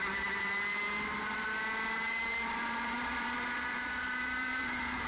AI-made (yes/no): yes